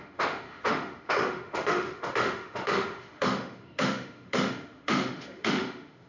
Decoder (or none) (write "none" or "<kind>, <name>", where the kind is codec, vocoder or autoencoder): autoencoder, DAC-VAE